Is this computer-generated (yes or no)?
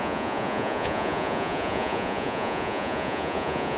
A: yes